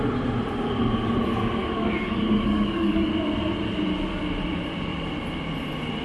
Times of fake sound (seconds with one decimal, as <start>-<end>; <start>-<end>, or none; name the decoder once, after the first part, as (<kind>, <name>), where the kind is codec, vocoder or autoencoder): 1.6-3.1 (codec, DAC)